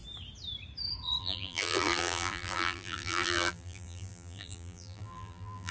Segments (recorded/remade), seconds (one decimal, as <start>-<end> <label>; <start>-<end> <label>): 0.0-1.2 recorded; 1.2-5.7 remade